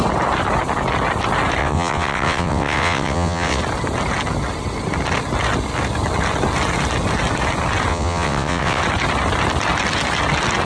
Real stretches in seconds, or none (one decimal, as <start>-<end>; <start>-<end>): 0.0-1.6; 3.6-7.9; 8.8-10.6

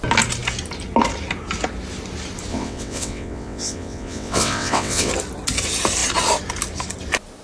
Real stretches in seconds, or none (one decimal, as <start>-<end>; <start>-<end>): 0.0-2.5; 5.1-7.4